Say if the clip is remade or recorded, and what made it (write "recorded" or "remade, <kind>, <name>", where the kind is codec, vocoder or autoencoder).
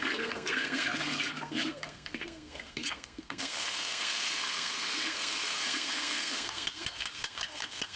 remade, codec, SNAC